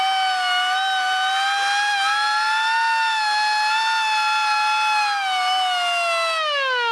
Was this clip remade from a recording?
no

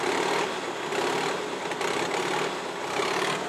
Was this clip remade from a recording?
no